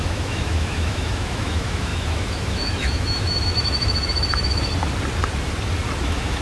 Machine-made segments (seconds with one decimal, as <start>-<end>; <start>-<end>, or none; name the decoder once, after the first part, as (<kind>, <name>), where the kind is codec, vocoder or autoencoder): 0.0-4.7 (autoencoder, DAC-VAE); 6.0-6.4